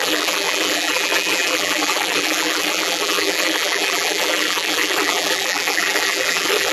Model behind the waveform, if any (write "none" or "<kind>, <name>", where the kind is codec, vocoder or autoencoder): vocoder, BigVGAN v2